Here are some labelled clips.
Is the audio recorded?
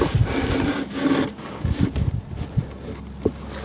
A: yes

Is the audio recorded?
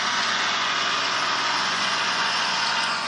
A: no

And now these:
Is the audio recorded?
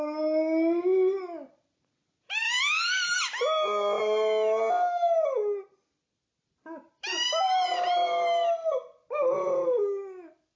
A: yes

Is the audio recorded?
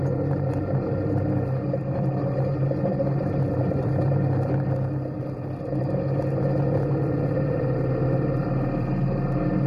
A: yes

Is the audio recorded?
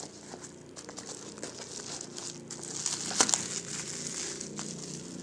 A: yes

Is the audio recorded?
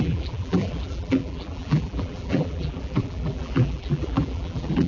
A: no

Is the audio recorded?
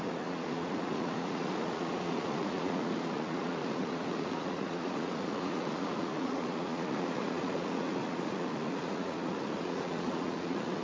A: no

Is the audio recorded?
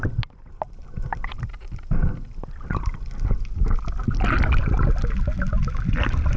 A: yes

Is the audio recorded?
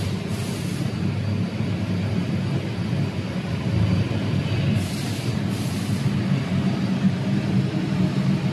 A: yes